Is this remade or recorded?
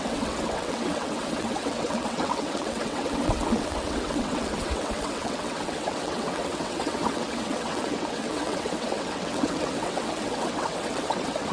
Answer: remade